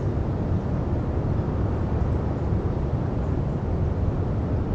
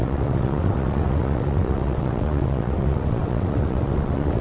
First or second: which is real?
first